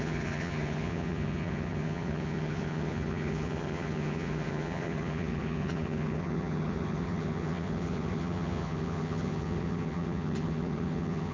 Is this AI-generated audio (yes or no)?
yes